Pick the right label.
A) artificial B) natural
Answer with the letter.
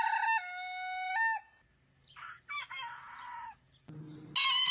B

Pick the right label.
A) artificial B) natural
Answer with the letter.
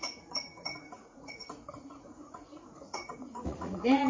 A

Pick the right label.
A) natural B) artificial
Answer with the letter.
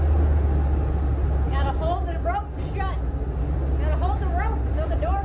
A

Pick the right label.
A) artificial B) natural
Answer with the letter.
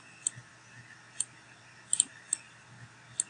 B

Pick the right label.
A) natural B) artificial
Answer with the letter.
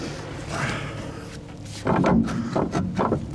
A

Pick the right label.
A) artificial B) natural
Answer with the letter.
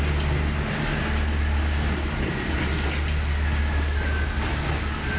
B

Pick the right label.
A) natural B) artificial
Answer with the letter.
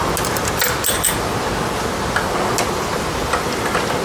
A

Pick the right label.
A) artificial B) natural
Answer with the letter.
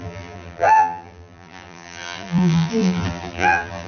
A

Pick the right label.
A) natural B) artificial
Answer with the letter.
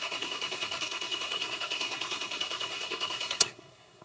B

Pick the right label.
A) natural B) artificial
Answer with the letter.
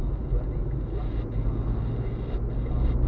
A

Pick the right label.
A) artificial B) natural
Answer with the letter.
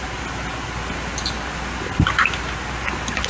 B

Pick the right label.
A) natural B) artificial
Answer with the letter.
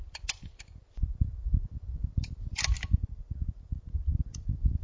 B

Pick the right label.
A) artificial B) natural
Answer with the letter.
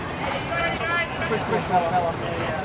B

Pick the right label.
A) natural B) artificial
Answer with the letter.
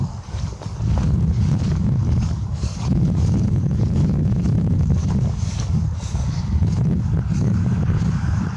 B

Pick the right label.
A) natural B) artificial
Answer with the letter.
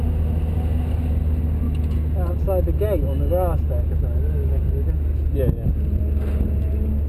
A